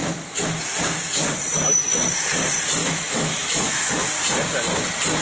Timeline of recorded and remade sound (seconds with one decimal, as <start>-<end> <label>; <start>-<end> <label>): 0.0-2.8 recorded; 2.8-3.9 remade; 3.9-5.2 recorded